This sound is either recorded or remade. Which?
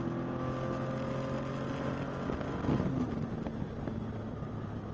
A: recorded